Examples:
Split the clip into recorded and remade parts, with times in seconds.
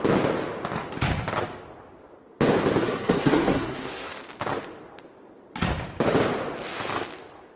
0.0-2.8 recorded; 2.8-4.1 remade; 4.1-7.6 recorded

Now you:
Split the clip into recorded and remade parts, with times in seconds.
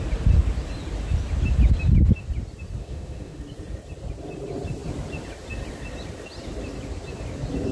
0.0-2.8 recorded; 2.8-3.4 remade; 3.4-7.7 recorded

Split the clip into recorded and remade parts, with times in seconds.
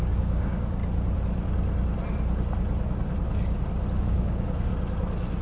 0.0-0.8 remade; 0.8-4.0 recorded; 4.0-4.7 remade; 4.7-5.4 recorded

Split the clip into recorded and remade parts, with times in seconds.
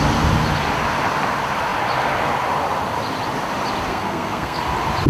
0.0-3.9 recorded; 3.9-4.6 remade; 4.6-5.1 recorded